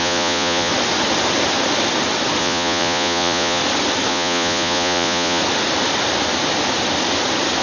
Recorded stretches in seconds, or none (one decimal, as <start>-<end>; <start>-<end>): 0.7-2.4; 3.6-4.1; 5.4-7.6